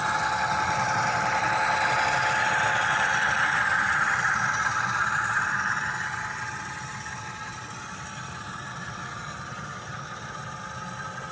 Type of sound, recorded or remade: recorded